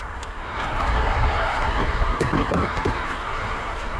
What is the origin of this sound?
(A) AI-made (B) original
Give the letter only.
A